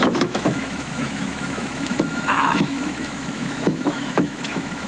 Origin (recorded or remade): remade